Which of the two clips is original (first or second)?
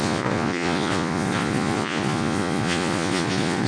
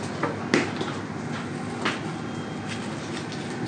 second